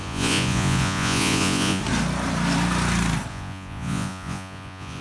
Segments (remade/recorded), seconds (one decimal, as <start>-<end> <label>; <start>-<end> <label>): 0.0-1.8 remade; 1.8-3.3 recorded; 3.3-5.0 remade